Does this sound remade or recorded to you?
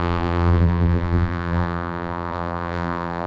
remade